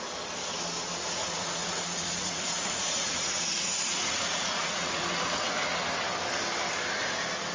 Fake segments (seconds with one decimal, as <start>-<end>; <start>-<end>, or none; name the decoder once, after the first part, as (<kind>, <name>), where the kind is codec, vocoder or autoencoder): 1.2-5.7 (vocoder, Vocos)